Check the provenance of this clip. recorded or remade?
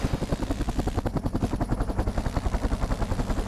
recorded